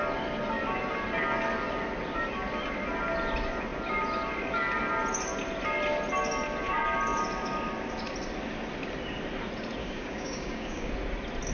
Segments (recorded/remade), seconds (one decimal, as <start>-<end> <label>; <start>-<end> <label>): 0.0-9.8 recorded; 9.8-10.9 remade; 10.9-11.5 recorded